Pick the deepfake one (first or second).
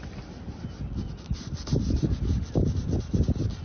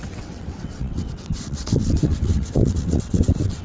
second